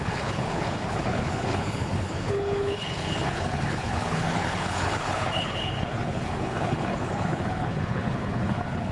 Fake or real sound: fake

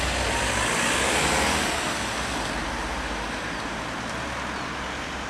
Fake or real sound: real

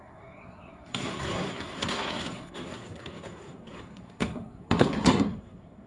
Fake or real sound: fake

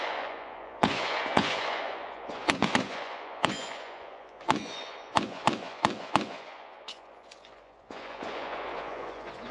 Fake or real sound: fake